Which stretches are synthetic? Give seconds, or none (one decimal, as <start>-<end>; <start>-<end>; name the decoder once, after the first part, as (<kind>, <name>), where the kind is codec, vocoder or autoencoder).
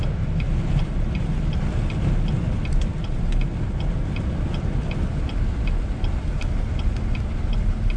none